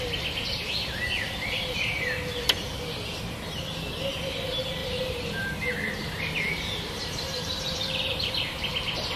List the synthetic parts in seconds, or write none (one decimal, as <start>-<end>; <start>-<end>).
4.8-8.3